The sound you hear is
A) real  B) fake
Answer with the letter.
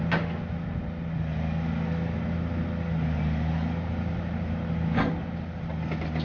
A